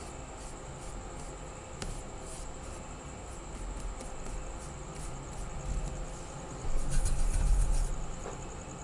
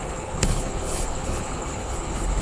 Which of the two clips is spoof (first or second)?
second